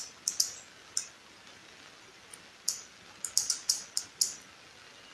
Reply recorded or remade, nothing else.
recorded